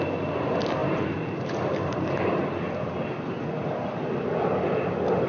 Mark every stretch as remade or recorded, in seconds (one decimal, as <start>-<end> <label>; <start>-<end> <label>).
0.0-0.8 recorded; 0.8-2.4 remade; 2.4-5.3 recorded